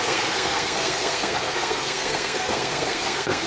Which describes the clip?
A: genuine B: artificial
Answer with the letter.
B